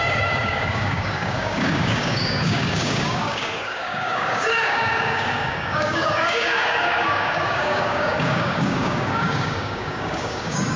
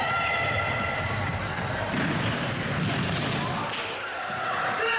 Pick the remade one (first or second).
first